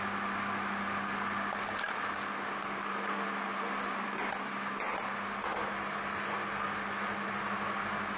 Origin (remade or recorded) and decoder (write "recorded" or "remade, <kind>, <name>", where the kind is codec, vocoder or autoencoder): recorded